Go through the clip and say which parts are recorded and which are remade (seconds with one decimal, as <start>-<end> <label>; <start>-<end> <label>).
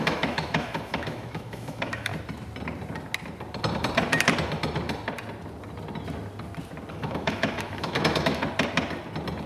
0.0-2.1 remade; 2.1-6.9 recorded; 6.9-8.4 remade; 8.4-9.5 recorded